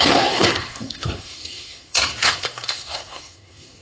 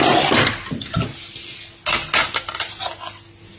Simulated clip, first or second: first